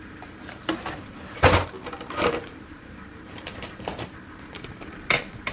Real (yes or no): no